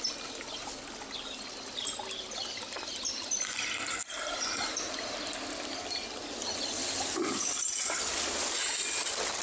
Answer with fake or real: real